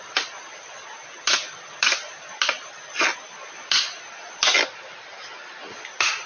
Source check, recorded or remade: recorded